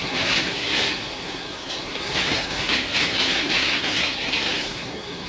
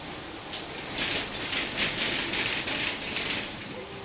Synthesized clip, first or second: first